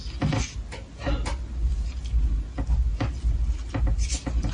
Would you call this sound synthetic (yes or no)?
no